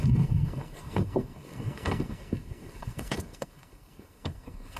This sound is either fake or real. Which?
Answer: fake